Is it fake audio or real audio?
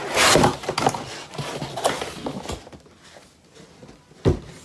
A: real